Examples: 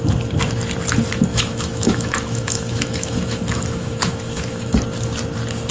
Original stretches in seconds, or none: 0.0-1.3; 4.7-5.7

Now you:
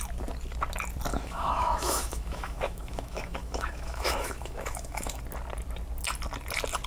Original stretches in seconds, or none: 0.0-1.1; 5.2-6.9

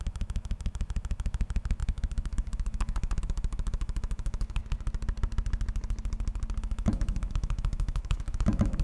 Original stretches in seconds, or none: 4.6-6.6

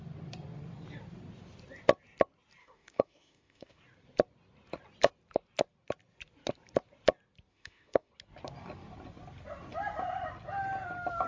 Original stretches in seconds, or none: 0.0-2.6; 3.8-7.5; 8.1-11.3

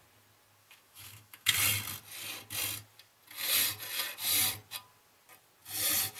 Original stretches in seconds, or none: 0.0-0.6; 1.5-6.2

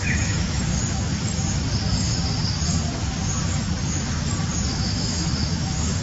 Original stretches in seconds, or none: 1.1-4.7

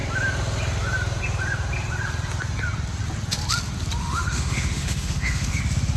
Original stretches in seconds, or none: 0.0-4.0; 5.6-6.0